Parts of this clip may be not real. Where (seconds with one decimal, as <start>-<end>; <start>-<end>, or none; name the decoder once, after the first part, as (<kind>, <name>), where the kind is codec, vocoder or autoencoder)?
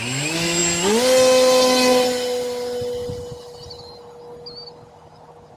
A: none